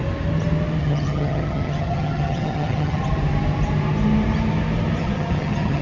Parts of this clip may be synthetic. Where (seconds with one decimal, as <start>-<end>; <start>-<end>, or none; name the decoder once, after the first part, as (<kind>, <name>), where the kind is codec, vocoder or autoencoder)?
0.8-3.0 (vocoder, HiFi-GAN); 5.0-5.8